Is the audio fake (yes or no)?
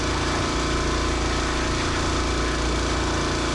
no